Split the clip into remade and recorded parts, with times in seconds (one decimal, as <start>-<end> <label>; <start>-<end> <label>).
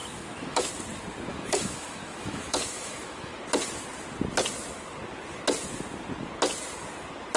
0.0-0.7 remade; 0.7-1.3 recorded; 1.3-3.4 remade; 3.4-7.4 recorded